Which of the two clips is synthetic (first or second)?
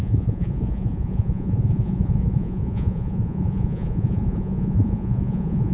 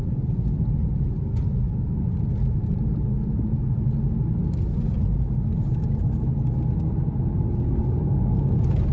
first